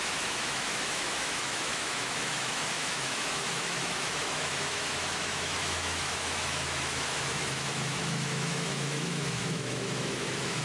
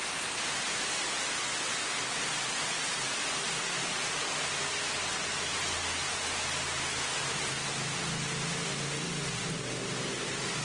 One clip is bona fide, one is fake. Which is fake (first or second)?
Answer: first